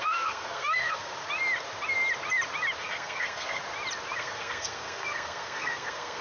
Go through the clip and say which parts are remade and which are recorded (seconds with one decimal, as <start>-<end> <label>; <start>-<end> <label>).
0.0-1.1 remade; 1.1-2.8 recorded; 2.8-3.6 remade; 3.6-4.2 recorded; 4.2-6.2 remade

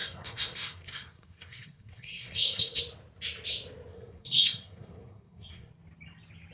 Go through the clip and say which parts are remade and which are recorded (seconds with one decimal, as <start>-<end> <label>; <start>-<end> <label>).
0.0-2.8 remade; 2.8-3.9 recorded; 3.9-5.7 remade; 5.7-6.5 recorded